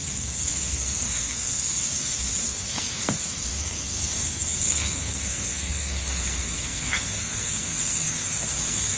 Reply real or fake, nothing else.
fake